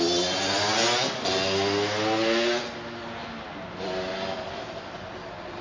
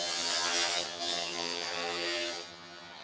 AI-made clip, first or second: second